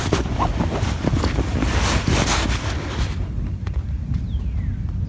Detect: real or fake real